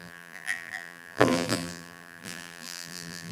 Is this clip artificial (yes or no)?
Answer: yes